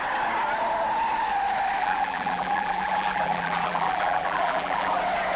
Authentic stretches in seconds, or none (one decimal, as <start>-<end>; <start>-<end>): 0.0-1.8; 5.0-5.4